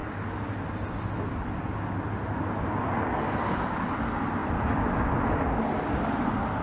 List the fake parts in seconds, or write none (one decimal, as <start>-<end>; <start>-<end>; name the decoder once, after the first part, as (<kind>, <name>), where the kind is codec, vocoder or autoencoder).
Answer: none